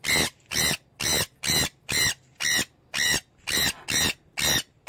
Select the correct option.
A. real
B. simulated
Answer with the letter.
A